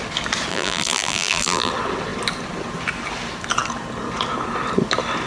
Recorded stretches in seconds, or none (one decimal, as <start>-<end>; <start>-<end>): 0.0-0.5; 1.7-5.3

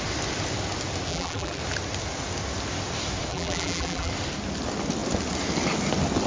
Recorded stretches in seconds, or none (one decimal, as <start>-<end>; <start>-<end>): 0.0-1.1; 1.6-3.3; 4.1-6.3